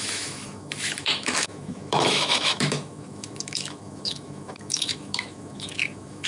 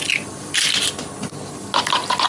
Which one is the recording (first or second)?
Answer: second